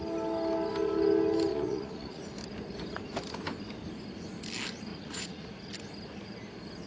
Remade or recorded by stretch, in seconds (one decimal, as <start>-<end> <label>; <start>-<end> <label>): 0.0-1.5 recorded; 1.5-2.2 remade; 2.2-4.9 recorded; 4.9-5.7 remade; 5.7-6.9 recorded